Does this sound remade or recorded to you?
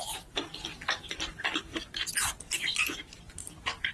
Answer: recorded